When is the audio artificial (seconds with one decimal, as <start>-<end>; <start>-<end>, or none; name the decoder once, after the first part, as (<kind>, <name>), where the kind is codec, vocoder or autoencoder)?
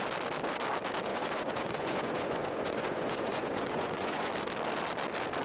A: 1.1-4.3 (vocoder, Vocos)